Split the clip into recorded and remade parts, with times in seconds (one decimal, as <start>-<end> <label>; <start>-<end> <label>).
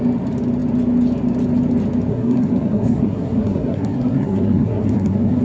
0.0-2.1 recorded; 2.1-5.4 remade